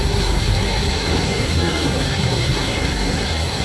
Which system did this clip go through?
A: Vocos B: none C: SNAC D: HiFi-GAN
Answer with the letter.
C